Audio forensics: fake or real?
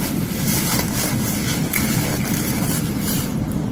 fake